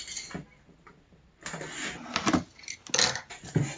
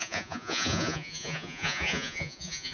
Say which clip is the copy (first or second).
second